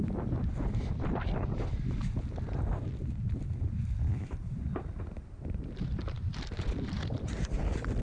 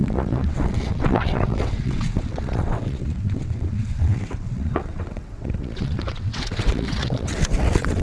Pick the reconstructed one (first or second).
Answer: second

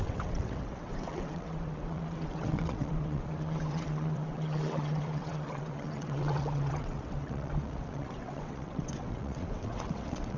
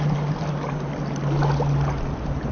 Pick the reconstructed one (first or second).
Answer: first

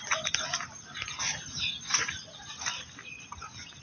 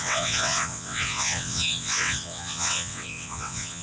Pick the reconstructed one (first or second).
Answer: second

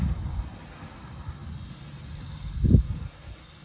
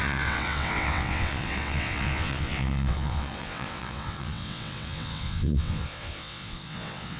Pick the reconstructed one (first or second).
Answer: second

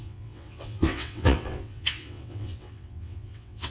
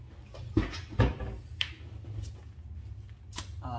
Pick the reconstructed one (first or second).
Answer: first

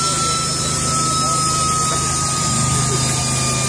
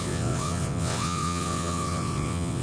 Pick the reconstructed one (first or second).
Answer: second